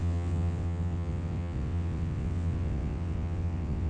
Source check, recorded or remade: remade